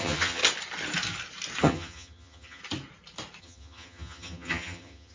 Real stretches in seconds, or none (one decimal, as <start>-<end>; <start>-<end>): 0.4-1.6; 2.6-3.4